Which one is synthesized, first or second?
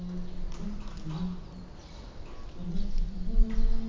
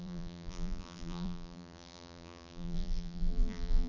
second